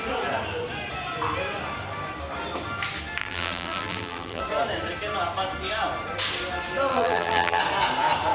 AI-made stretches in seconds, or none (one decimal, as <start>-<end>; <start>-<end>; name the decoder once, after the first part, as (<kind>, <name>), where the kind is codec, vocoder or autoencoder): 3.2-4.4 (vocoder, BigVGAN v2); 6.9-7.6